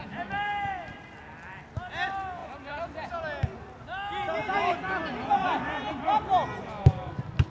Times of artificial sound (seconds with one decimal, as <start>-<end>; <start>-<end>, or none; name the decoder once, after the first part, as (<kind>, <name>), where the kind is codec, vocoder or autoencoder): none